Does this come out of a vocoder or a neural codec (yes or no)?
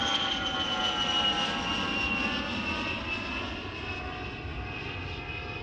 no